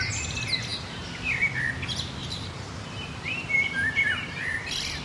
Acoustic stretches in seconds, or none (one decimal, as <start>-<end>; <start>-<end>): 0.0-2.2